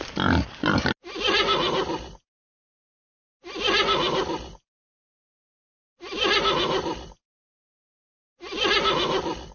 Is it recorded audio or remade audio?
recorded